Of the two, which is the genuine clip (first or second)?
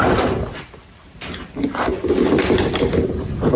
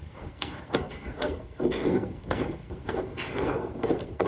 first